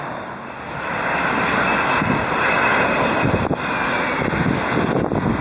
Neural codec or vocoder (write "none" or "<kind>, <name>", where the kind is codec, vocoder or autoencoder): none